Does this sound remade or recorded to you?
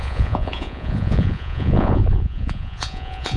remade